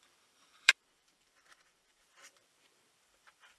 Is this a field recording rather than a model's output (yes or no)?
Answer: no